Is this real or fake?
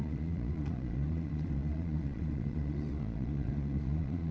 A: fake